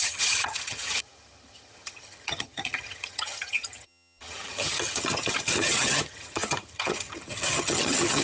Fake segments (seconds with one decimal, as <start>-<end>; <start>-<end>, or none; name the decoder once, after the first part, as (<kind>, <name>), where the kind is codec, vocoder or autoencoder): 0.0-8.2 (vocoder, HiFi-GAN)